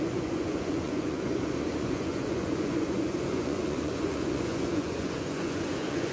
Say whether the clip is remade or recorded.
remade